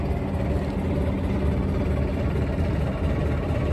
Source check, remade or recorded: recorded